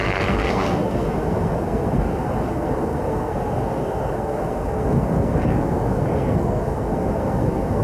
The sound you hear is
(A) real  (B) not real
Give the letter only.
B